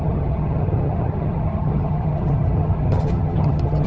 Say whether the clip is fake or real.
fake